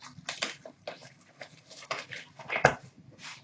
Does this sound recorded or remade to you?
recorded